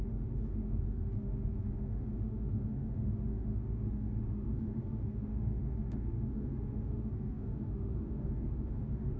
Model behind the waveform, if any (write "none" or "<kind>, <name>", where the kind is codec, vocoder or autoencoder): autoencoder, DAC-VAE